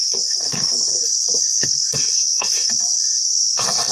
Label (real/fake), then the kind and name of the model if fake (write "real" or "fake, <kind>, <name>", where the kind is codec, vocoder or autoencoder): fake, codec, SNAC